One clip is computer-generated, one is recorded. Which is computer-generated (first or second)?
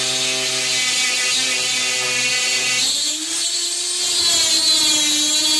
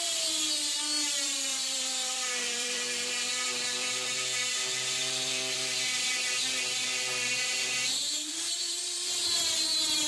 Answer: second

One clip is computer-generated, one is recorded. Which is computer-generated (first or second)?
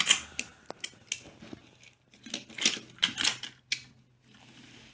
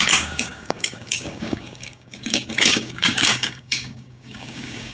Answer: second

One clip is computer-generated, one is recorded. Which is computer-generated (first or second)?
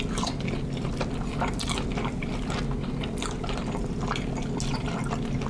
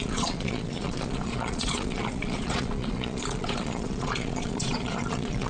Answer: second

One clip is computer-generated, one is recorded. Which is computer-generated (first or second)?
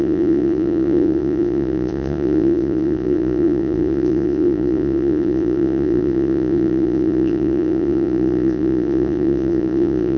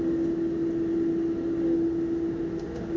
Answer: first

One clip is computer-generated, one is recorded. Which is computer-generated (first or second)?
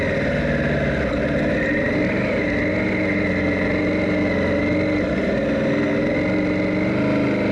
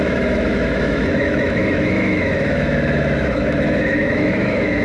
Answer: second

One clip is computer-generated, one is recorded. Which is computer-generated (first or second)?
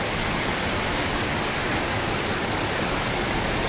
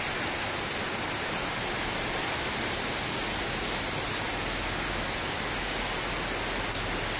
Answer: first